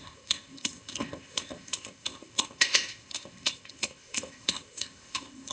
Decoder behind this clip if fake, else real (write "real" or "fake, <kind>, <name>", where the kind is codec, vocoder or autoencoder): fake, codec, ZipCodec